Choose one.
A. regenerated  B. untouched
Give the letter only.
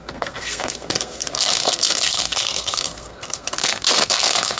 A